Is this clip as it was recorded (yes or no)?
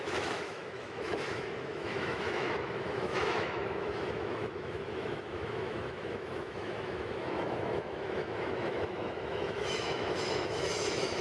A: no